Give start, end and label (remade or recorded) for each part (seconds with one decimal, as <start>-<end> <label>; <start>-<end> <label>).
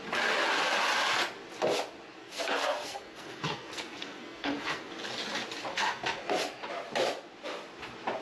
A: 0.0-2.2 recorded; 2.2-4.9 remade; 4.9-5.7 recorded; 5.7-6.3 remade; 6.3-8.2 recorded